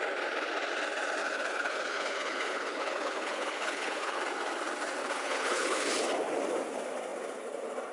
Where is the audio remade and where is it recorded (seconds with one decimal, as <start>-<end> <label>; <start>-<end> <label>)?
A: 0.0-1.2 recorded; 1.2-4.2 remade; 4.2-5.0 recorded; 5.0-5.9 remade; 5.9-7.9 recorded

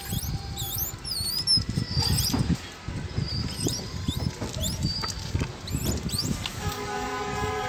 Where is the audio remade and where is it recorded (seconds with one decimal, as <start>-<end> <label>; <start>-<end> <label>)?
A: 0.0-6.5 recorded; 6.5-7.7 remade

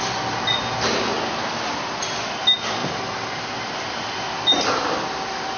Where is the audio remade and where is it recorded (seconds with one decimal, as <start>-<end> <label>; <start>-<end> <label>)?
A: 0.0-5.6 recorded

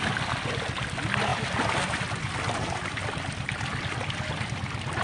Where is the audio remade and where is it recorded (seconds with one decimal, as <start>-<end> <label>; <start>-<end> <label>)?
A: 0.0-5.0 recorded